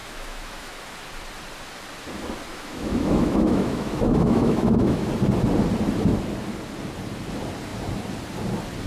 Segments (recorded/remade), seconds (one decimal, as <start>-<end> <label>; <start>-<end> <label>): 0.0-0.8 remade; 0.8-2.5 recorded; 2.5-5.0 remade; 5.0-8.9 recorded